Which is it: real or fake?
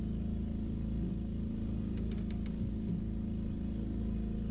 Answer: real